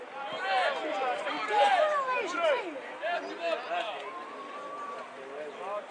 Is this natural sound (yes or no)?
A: yes